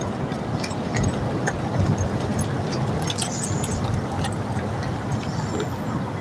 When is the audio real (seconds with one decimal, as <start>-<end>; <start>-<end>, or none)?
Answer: 0.0-6.2